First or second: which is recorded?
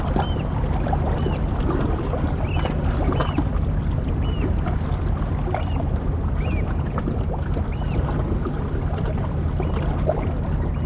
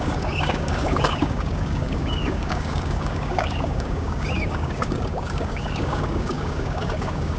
first